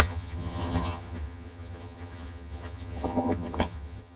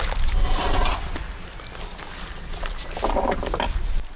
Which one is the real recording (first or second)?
second